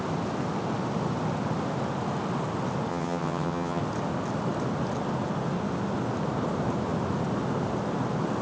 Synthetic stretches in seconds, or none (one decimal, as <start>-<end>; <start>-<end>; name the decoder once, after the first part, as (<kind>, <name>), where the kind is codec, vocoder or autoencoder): 2.9-3.8 (vocoder, HiFi-GAN)